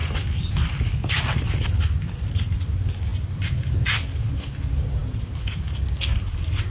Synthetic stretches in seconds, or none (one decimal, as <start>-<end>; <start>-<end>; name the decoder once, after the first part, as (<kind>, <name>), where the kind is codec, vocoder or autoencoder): none